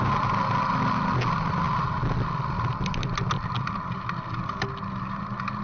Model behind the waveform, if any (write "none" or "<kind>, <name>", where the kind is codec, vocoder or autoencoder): none